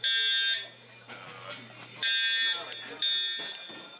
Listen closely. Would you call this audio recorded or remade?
recorded